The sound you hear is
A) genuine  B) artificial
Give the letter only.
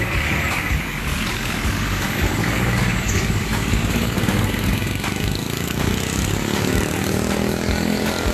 B